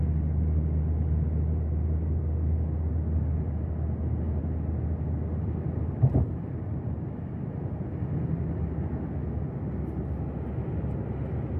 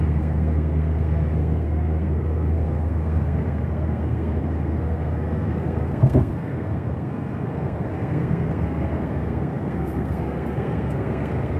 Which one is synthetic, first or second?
second